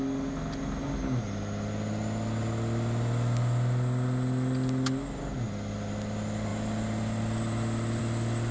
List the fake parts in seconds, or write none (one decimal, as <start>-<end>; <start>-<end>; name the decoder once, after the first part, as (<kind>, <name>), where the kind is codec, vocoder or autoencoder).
none